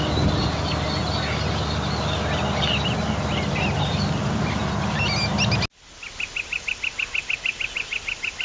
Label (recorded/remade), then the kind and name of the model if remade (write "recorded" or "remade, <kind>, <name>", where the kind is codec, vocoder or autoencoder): recorded